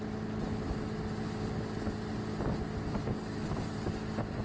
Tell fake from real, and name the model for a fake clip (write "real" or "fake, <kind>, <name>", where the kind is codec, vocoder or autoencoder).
real